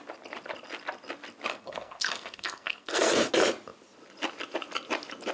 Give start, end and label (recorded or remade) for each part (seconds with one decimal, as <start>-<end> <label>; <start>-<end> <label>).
0.0-1.5 recorded; 1.5-3.3 remade; 3.3-5.3 recorded